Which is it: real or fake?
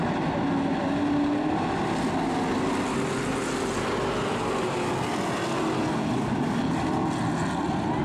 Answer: real